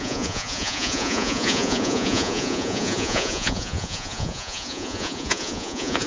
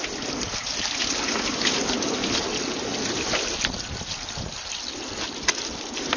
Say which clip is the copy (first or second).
first